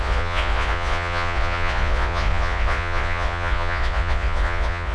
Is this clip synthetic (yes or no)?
yes